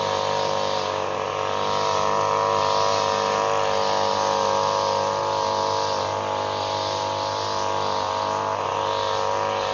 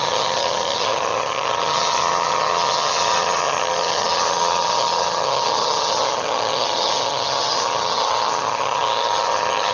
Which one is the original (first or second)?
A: first